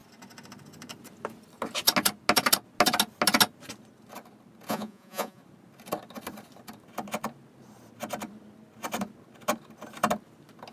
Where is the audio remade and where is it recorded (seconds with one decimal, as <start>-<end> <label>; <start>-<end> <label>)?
0.0-4.7 recorded; 4.7-5.4 remade; 5.4-10.7 recorded